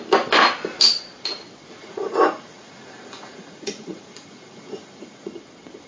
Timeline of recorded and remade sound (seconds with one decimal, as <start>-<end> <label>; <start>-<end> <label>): 0.0-1.8 recorded; 1.8-5.3 remade; 5.3-5.9 recorded